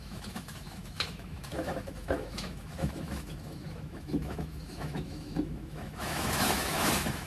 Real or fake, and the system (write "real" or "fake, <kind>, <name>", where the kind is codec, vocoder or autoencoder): fake, autoencoder, DAC-VAE